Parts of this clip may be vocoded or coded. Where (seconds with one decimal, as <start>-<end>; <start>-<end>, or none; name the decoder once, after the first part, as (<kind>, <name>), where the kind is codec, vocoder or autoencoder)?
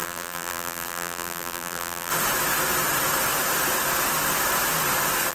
0.0-2.1 (vocoder, BigVGAN v2)